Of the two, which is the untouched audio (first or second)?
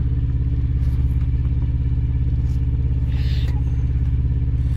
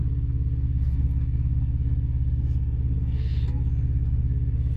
first